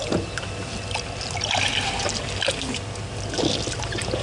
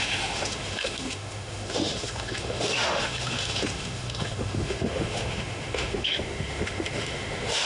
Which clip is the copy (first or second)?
second